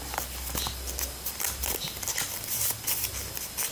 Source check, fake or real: real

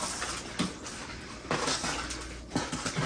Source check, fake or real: real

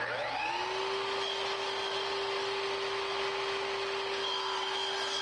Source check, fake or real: real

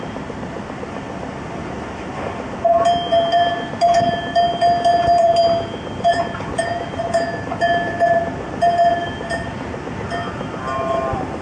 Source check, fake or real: real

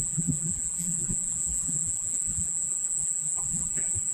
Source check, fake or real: fake